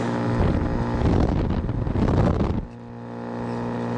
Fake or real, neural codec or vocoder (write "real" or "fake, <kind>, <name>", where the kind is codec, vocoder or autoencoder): real